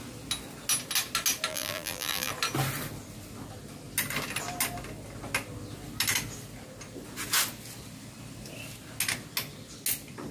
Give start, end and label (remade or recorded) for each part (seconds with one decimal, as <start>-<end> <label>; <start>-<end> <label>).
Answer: 0.0-1.5 recorded; 1.5-2.3 remade; 2.3-10.3 recorded